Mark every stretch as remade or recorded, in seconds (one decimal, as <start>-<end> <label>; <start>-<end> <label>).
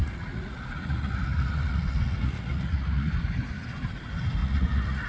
0.0-3.1 remade; 3.1-4.4 recorded; 4.4-5.1 remade